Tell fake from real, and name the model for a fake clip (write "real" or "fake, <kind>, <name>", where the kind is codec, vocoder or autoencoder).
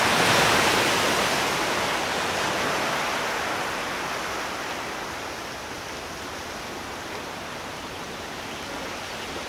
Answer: real